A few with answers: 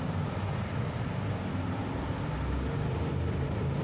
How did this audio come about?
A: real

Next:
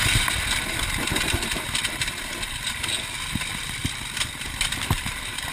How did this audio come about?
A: real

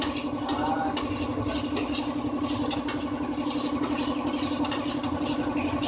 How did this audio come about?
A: real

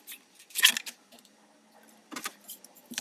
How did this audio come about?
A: real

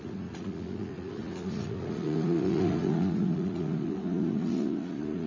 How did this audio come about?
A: fake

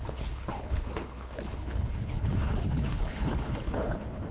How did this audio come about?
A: fake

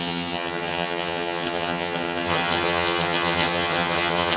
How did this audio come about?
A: fake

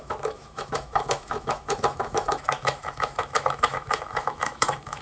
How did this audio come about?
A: fake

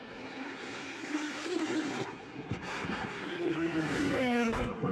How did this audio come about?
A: fake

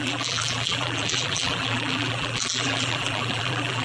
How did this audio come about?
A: fake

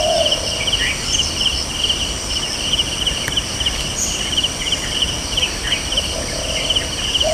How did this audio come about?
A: fake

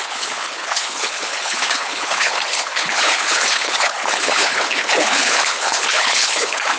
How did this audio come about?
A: fake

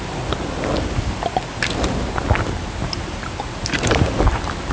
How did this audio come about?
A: real